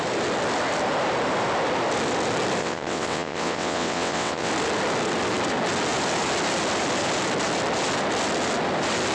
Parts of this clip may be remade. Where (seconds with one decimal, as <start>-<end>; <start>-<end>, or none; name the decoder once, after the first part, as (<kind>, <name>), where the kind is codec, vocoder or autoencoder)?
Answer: 2.6-4.5 (vocoder, WaveNeXt)

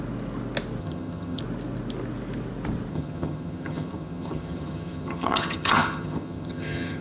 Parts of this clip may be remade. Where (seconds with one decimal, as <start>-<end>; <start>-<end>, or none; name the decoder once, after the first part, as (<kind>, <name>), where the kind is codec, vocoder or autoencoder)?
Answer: 0.8-1.4 (vocoder, HiFi-GAN); 2.9-7.0

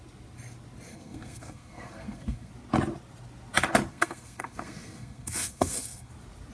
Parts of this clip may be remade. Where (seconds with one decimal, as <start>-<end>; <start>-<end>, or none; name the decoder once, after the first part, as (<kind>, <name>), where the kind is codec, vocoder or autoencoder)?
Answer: 0.9-2.5 (codec, SNAC); 3.9-6.1

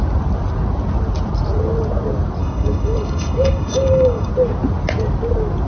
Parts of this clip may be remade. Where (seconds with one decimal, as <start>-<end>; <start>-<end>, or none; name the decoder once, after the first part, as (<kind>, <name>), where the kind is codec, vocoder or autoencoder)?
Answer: 2.4-4.3 (codec, DAC)

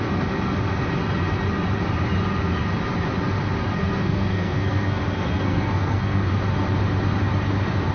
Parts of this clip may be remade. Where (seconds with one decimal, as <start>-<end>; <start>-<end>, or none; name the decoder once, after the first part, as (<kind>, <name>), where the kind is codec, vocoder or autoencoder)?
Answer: 3.8-6.3 (codec, SNAC)

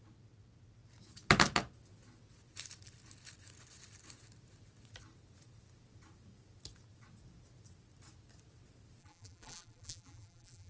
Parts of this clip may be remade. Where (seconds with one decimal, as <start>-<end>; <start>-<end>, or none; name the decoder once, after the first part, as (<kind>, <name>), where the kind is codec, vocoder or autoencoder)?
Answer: 9.0-10.7 (vocoder, BigVGAN v2)

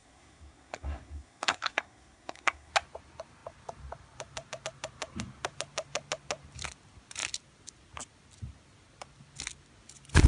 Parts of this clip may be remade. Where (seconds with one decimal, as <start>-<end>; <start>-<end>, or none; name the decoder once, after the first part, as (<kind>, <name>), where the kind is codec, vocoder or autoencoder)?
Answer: 0.0-2.7 (codec, SNAC)